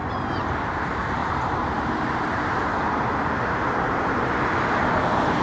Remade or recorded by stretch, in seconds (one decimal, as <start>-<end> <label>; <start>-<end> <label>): 0.0-1.2 recorded; 1.2-2.4 remade; 2.4-3.6 recorded; 3.6-4.5 remade; 4.5-5.4 recorded

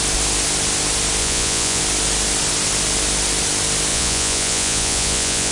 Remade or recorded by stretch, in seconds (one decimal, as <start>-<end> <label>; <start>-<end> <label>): 0.0-1.2 recorded; 1.2-1.8 remade; 1.8-3.9 recorded; 3.9-5.5 remade